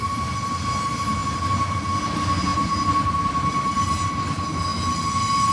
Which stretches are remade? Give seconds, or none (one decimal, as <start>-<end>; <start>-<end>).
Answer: none